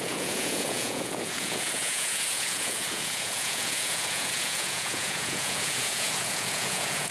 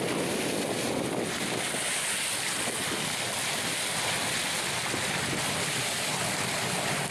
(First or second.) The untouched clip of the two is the second